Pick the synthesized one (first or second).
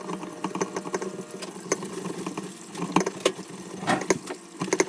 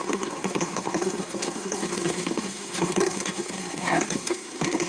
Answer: second